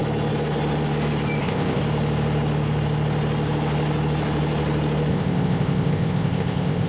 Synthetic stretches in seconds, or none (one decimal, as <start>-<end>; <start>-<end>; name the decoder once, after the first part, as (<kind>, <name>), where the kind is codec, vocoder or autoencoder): 1.4-1.8 (codec, ZipCodec); 5.1-6.9